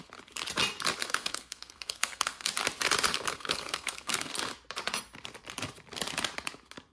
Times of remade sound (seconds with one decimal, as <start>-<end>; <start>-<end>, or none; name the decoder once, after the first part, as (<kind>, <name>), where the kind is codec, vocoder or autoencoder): 1.0-2.5 (codec, SNAC); 3.1-4.3